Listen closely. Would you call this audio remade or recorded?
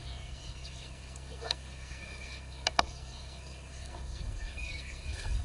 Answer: remade